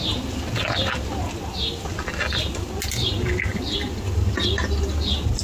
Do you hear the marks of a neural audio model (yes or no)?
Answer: no